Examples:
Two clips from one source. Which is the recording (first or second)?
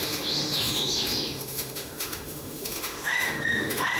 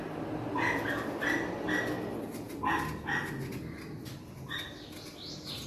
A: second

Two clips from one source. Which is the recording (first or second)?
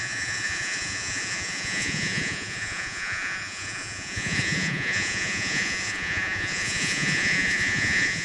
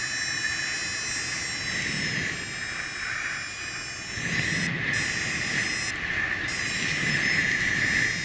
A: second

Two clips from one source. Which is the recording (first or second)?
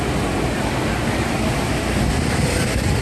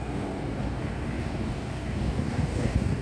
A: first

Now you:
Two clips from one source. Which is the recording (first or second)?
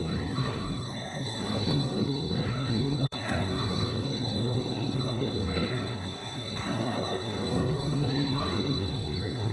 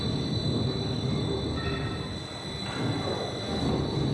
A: second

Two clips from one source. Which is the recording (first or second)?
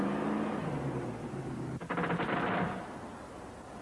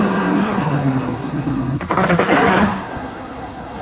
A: first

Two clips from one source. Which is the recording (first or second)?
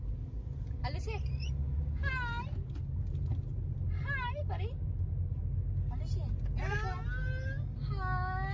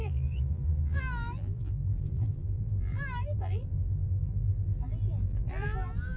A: first